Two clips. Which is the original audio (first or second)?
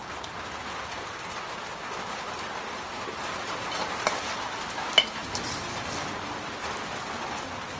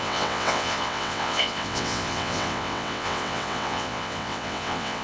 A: first